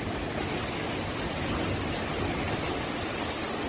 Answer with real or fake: real